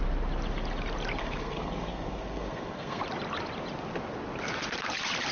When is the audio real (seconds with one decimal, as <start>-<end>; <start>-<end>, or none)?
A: 0.0-1.2; 3.0-5.3